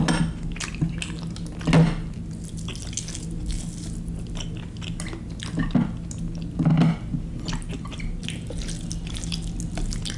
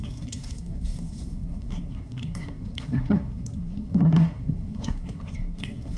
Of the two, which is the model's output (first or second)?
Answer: second